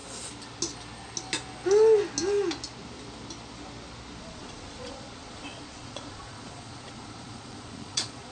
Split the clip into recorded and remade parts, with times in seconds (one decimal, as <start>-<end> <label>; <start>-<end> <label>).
0.0-4.2 recorded; 4.2-8.3 remade